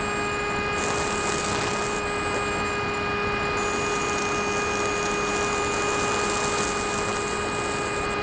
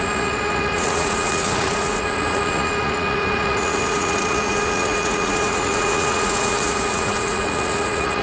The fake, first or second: second